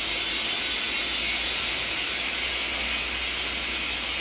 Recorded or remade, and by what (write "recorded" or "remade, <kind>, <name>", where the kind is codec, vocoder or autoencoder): recorded